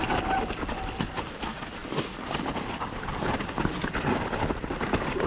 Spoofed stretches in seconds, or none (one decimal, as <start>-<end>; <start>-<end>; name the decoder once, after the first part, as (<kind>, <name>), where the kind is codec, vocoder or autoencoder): none